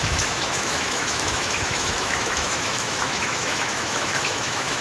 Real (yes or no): no